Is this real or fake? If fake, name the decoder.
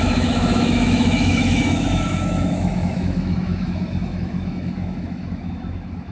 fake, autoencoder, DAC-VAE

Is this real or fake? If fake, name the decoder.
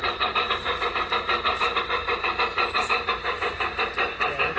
real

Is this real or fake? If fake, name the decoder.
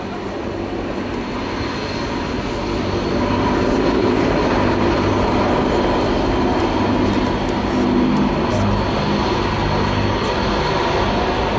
real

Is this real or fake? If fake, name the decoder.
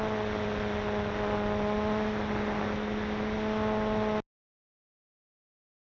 real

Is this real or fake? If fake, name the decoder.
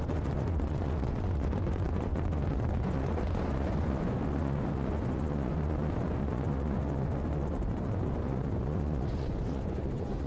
fake, vocoder, Vocos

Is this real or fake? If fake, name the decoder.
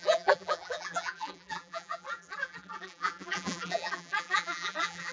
fake, vocoder, BigVGAN v2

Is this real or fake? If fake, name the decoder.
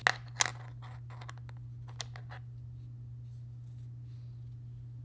real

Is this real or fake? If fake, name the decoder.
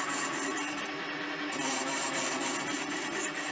real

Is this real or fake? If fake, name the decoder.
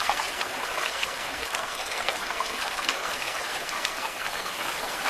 fake, codec, SNAC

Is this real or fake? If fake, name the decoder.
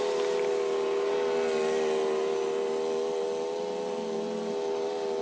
real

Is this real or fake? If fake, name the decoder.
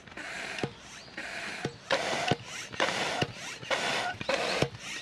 real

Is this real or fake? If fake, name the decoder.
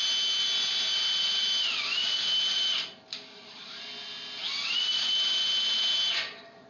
real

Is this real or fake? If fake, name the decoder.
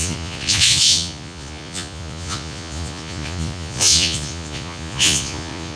fake, vocoder, Vocos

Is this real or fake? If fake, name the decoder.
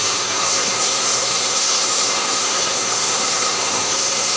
fake, codec, SNAC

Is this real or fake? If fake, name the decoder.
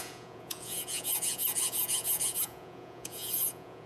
fake, vocoder, Vocos